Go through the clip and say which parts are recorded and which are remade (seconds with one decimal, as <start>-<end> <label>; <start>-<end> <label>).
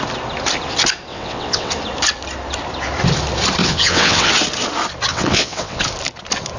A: 0.0-1.1 recorded; 1.1-1.7 remade; 1.7-3.6 recorded; 3.6-4.3 remade; 4.3-5.1 recorded; 5.1-5.8 remade; 5.8-6.6 recorded